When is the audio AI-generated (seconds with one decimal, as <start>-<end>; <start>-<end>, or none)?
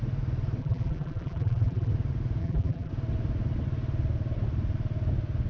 0.6-1.9; 2.4-2.9